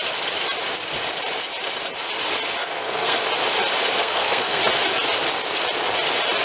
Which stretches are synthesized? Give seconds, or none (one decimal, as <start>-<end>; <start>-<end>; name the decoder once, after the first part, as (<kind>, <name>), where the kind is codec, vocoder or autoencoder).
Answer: 2.6-3.2 (codec, SNAC); 4.0-4.6